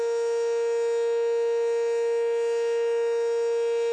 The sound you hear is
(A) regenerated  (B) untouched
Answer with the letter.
B